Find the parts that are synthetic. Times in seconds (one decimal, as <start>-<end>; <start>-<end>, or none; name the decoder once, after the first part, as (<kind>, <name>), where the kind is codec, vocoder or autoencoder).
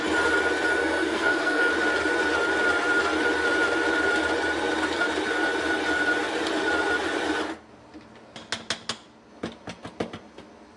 0.8-1.7 (codec, SNAC)